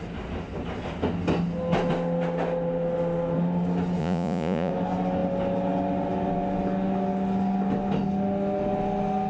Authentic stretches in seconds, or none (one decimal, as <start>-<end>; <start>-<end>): 0.0-4.0; 4.7-9.3